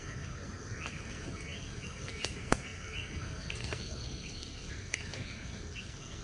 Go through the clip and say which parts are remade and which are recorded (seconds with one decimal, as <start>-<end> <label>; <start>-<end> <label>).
0.0-6.2 remade